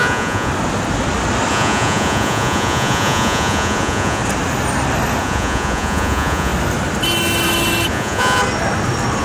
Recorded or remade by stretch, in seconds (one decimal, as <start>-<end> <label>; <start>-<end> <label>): 0.0-0.5 remade; 0.5-1.5 recorded; 1.5-4.2 remade; 4.2-5.2 recorded; 5.2-6.5 remade; 6.5-7.9 recorded; 7.9-8.4 remade; 8.4-9.2 recorded